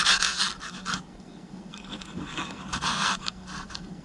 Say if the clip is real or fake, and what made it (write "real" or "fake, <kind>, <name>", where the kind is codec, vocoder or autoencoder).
fake, codec, SNAC